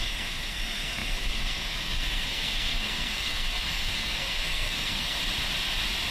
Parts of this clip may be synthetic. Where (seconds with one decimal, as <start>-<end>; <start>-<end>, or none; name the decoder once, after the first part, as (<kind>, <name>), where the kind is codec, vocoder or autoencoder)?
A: 0.0-5.2 (codec, SNAC)